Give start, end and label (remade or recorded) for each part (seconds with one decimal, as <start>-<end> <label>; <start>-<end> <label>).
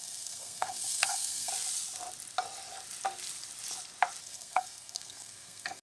0.0-1.5 remade; 1.5-4.2 recorded; 4.2-5.8 remade